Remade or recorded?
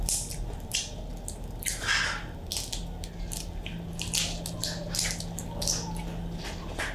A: recorded